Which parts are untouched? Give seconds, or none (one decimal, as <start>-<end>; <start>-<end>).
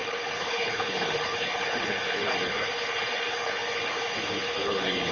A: none